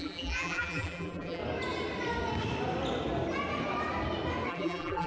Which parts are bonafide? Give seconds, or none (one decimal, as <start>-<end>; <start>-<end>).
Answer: 1.4-4.5